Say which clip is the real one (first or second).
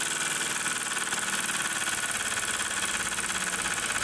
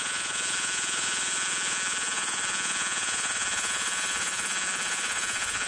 first